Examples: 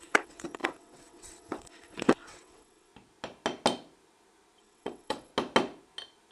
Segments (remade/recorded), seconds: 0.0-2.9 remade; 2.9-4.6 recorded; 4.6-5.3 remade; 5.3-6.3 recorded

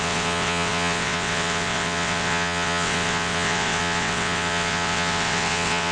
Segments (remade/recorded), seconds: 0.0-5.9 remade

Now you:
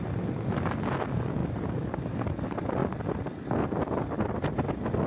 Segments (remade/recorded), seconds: 0.0-5.1 recorded

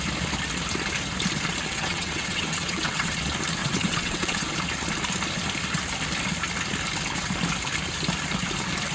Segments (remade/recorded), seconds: 0.0-1.7 recorded; 1.7-3.2 remade; 3.2-3.6 recorded; 3.6-4.5 remade; 4.5-8.9 recorded